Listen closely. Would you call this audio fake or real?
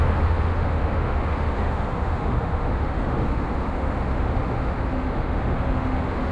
fake